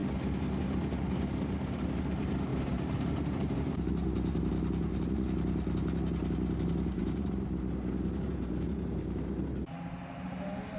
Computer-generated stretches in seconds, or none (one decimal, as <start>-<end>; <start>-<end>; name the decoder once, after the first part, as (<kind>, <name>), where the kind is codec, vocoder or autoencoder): 2.5-4.5 (vocoder, BigVGAN v2); 7.0-7.6